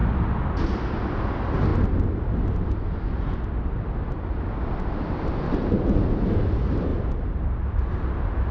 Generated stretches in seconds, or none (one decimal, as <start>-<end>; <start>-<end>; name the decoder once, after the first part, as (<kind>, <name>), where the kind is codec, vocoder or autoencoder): none